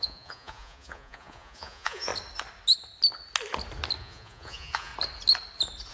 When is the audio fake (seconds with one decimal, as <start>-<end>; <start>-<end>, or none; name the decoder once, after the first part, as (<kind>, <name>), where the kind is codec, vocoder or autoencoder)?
0.0-2.1 (vocoder, Vocos); 4.0-4.9